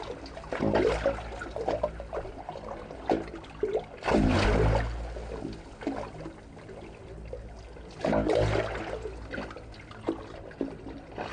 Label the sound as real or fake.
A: real